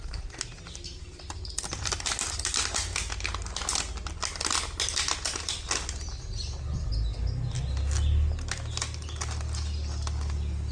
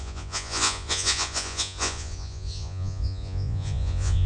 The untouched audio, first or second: first